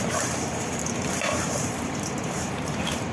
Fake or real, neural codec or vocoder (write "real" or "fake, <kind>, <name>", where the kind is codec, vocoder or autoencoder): fake, vocoder, BigVGAN v2